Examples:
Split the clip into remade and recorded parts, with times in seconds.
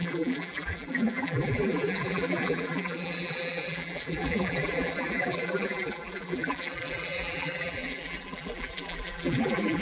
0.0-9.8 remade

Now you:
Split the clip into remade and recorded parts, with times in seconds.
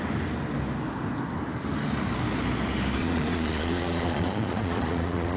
0.0-3.0 recorded; 3.0-5.4 remade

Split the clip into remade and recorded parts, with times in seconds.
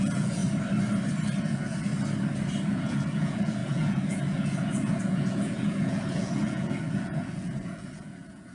0.0-0.4 remade; 0.4-1.4 recorded; 1.4-1.9 remade; 1.9-2.7 recorded; 2.7-8.5 remade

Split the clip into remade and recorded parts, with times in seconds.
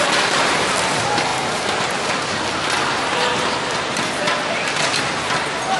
0.0-5.8 recorded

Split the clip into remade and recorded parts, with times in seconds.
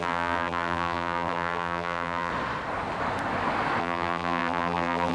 0.0-2.3 remade; 2.3-3.8 recorded; 3.8-5.1 remade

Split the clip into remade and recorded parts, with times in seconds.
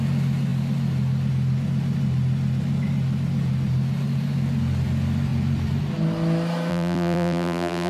0.0-6.7 recorded; 6.7-7.9 remade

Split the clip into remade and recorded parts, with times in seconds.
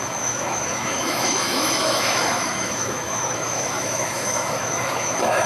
0.0-5.5 remade